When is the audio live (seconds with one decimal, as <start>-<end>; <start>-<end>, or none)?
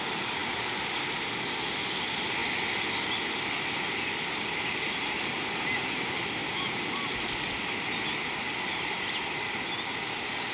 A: 0.0-10.5